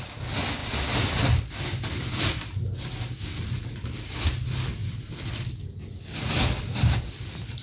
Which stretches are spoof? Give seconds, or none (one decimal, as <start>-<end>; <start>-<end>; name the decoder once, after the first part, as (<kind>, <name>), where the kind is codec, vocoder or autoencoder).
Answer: none